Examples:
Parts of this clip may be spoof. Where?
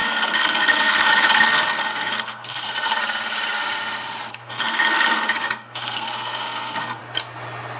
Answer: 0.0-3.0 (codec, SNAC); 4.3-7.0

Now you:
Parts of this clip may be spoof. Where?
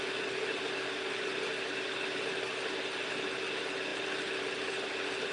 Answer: none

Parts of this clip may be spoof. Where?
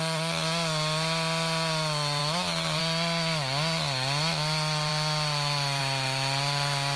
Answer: 2.2-2.8 (autoencoder, DAC-VAE)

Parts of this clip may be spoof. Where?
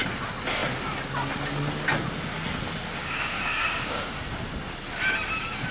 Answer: 3.0-4.1 (codec, DAC)